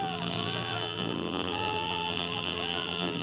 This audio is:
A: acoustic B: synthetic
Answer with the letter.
B